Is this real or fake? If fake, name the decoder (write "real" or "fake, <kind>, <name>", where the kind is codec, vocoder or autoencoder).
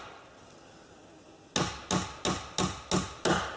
real